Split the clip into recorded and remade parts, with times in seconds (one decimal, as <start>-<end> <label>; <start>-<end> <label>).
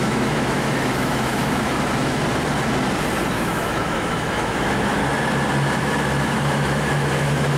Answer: 0.0-2.2 remade; 2.2-3.3 recorded; 3.3-5.0 remade; 5.0-5.8 recorded; 5.8-7.6 remade